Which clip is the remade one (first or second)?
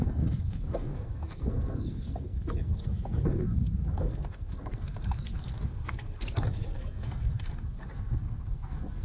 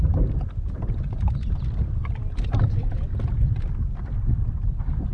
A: first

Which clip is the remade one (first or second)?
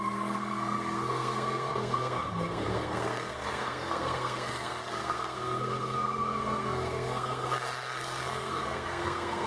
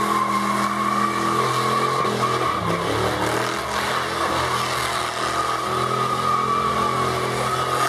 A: first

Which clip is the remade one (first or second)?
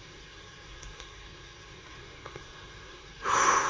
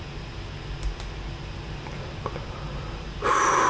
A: first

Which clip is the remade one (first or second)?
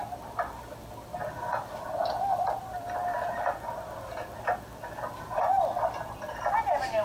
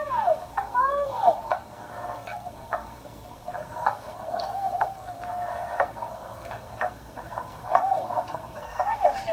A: second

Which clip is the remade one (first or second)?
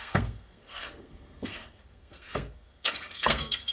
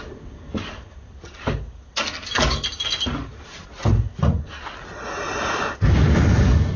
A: first